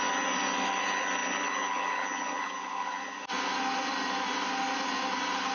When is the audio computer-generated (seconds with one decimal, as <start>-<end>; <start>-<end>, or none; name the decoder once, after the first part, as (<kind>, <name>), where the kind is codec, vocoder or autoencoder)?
none